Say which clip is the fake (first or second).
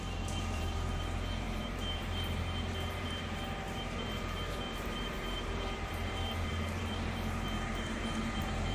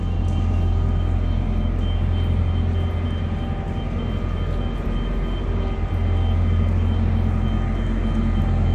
first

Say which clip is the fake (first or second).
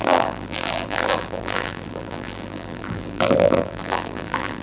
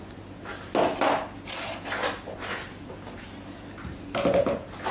first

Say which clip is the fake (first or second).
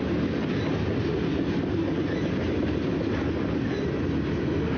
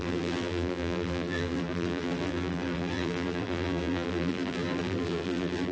second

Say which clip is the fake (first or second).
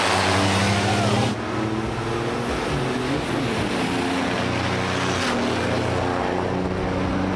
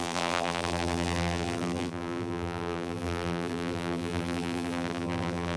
second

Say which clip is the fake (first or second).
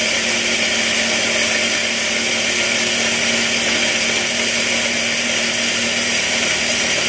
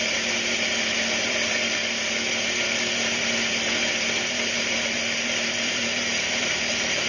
second